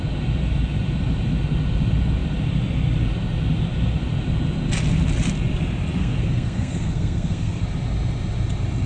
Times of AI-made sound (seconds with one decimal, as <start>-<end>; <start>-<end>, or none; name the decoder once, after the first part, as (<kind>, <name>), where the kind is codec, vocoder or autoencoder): 6.0-7.6 (codec, SNAC)